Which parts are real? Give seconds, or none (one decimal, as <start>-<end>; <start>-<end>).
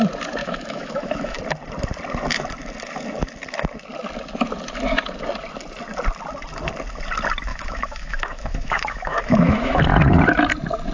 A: 0.0-0.4; 1.4-7.5; 9.8-10.9